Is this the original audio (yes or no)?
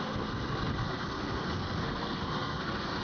no